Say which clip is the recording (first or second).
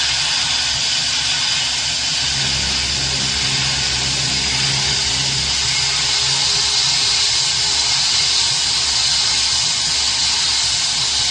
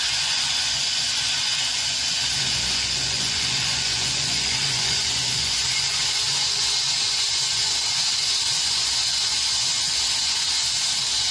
first